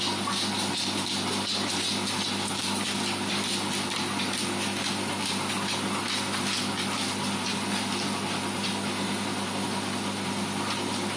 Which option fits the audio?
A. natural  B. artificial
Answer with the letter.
A